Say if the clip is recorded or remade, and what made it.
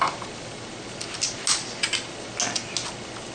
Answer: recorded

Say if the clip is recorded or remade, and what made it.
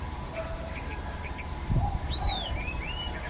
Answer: remade, vocoder, BigVGAN v2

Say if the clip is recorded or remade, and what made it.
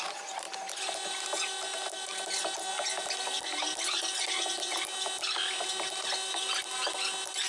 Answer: recorded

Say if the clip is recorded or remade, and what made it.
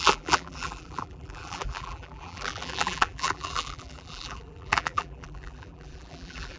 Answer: remade, vocoder, BigVGAN v2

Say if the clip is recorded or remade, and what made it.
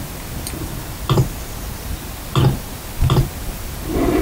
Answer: recorded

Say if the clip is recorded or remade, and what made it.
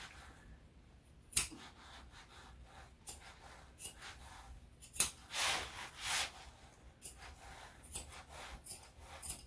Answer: recorded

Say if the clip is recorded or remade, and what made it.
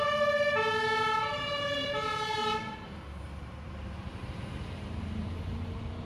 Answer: remade, vocoder, BigVGAN v2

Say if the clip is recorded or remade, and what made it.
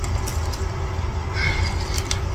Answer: recorded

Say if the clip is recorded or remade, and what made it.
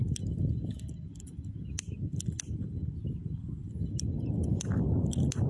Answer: recorded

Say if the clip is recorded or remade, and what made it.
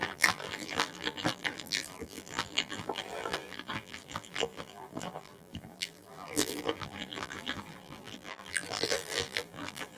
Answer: remade, vocoder, BigVGAN v2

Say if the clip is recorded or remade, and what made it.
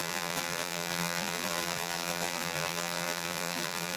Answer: remade, vocoder, BigVGAN v2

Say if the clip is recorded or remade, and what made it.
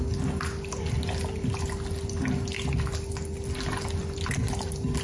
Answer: recorded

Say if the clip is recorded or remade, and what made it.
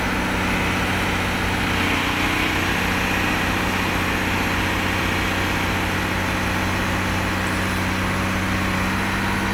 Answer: recorded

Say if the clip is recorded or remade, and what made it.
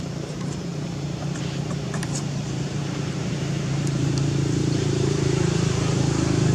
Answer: remade, vocoder, BigVGAN v2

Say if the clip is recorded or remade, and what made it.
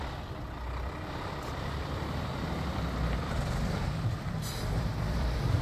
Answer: remade, vocoder, BigVGAN v2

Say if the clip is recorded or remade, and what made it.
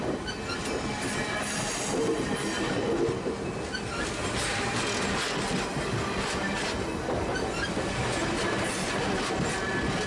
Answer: recorded